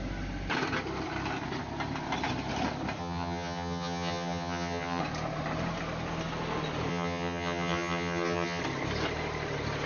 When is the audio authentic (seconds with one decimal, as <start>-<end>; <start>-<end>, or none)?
0.0-3.0; 5.0-6.9; 8.6-9.9